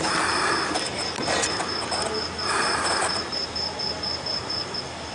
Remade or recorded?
recorded